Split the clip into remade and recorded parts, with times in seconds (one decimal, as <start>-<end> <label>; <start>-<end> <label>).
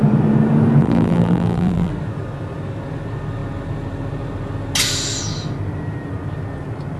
0.0-0.8 recorded; 0.8-1.9 remade; 1.9-7.0 recorded